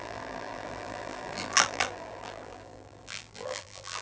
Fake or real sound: fake